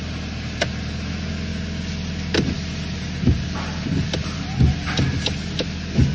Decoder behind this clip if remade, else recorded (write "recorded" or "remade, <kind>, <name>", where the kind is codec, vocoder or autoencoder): recorded